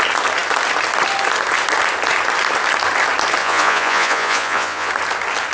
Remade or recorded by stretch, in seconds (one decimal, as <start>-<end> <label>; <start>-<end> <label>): 0.0-3.4 recorded; 3.4-4.9 remade; 4.9-5.5 recorded